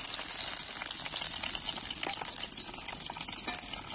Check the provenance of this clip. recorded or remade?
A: recorded